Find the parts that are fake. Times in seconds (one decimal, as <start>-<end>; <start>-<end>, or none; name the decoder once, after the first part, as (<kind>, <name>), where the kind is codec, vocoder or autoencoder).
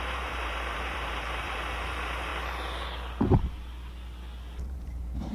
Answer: 0.0-2.3 (vocoder, BigVGAN v2); 4.6-5.3